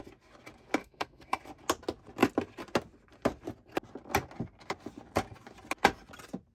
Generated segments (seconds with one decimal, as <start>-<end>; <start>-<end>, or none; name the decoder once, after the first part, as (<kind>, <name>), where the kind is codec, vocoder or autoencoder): 0.8-1.4 (codec, SNAC)